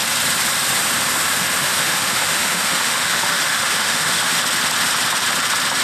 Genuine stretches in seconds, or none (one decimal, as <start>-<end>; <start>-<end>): 0.0-1.6; 4.4-5.8